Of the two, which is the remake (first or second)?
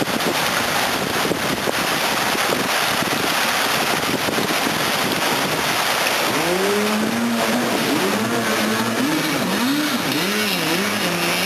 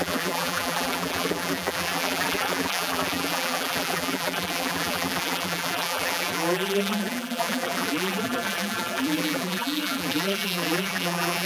second